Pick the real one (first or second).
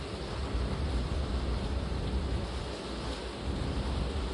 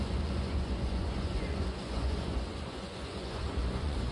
first